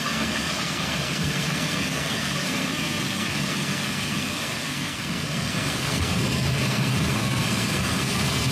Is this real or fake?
fake